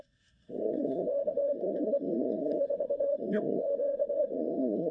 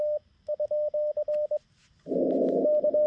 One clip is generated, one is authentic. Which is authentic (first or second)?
second